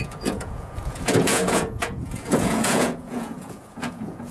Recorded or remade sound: remade